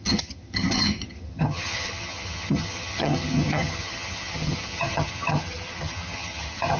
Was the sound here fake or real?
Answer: fake